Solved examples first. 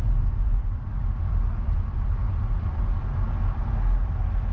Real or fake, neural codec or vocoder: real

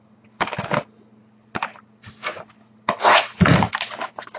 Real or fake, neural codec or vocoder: real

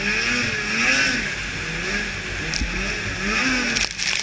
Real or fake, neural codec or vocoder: real